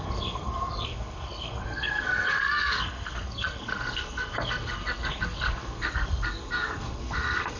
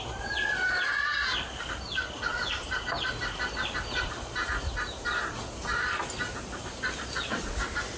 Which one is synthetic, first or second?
first